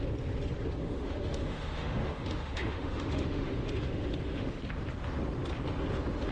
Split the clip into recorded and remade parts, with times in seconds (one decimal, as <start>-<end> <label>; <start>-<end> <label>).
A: 0.0-0.8 recorded; 0.8-4.6 remade; 4.6-6.3 recorded